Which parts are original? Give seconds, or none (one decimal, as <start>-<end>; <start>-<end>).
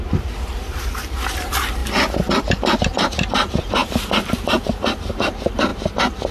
1.8-2.8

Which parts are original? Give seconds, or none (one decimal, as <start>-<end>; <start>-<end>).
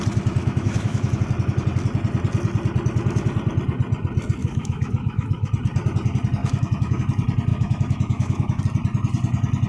0.0-0.4; 1.2-4.4; 5.5-6.4; 7.0-7.5; 8.6-9.7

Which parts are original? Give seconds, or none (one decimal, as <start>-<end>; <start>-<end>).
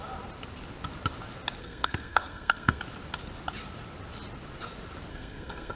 0.0-1.6; 2.8-5.1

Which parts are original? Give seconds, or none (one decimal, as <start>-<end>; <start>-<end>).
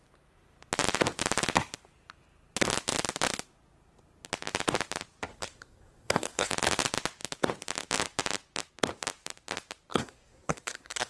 0.0-5.3; 6.5-9.9